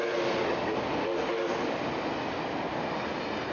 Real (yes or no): yes